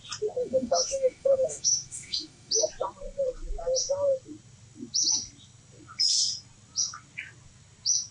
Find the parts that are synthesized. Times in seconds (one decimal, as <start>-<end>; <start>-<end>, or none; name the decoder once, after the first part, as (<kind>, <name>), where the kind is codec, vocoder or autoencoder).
0.4-2.5 (autoencoder, DAC-VAE)